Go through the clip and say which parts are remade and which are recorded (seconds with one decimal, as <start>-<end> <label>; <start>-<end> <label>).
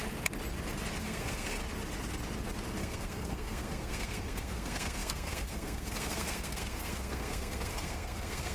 0.0-1.0 recorded; 1.0-1.6 remade; 1.6-2.8 recorded; 2.8-8.5 remade